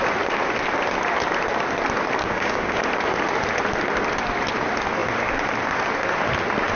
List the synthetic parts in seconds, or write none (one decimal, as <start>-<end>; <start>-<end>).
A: 2.2-2.8